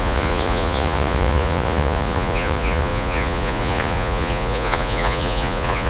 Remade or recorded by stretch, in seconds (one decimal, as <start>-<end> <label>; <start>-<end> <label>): 0.0-5.9 remade